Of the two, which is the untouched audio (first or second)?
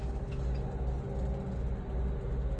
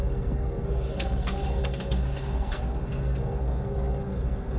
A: first